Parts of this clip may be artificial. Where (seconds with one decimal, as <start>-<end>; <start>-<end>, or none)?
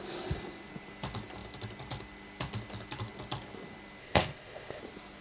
4.0-4.8